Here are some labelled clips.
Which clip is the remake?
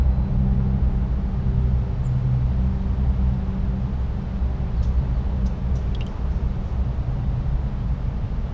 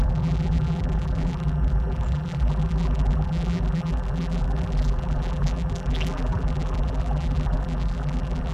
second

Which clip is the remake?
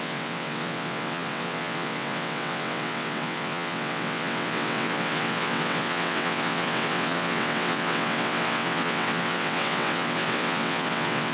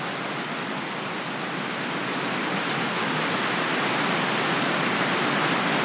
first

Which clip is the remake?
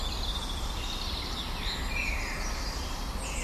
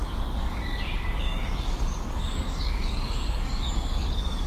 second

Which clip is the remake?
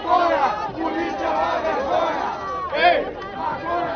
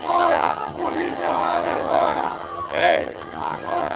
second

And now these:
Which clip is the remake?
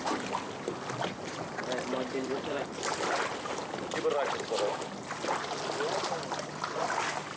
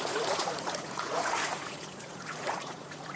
second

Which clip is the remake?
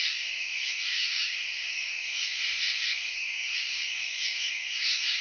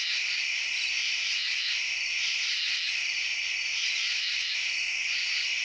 first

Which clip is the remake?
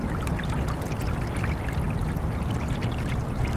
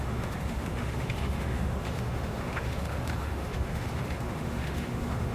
second